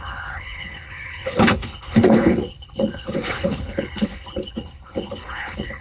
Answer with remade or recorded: remade